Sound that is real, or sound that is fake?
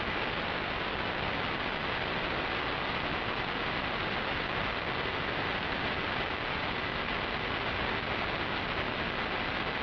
real